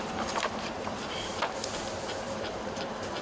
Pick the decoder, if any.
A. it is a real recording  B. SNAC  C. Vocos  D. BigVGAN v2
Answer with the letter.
D